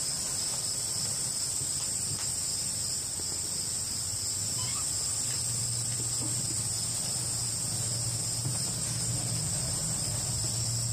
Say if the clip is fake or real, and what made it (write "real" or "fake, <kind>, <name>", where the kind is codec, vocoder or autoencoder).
real